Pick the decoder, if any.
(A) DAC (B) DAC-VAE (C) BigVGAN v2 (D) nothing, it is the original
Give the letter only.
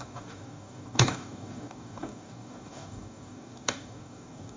A